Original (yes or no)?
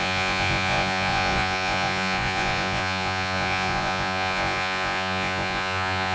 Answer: no